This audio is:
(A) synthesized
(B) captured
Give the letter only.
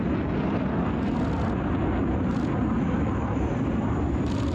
B